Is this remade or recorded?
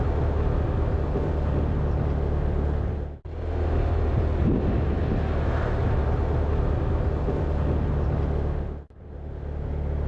recorded